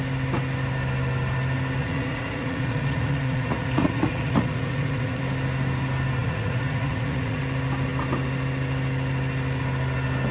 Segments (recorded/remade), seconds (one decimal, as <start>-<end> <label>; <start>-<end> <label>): 0.0-1.8 recorded; 1.8-5.2 remade; 5.2-6.2 recorded; 6.2-7.4 remade; 7.4-10.3 recorded